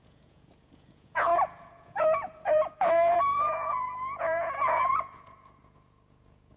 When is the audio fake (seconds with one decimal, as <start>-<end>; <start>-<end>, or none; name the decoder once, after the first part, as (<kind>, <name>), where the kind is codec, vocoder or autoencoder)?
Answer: 0.0-6.6 (vocoder, Vocos)